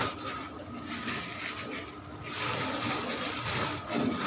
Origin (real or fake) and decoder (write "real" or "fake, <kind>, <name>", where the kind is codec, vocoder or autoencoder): real